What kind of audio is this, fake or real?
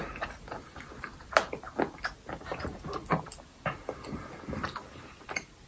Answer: real